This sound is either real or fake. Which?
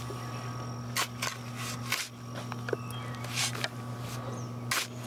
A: real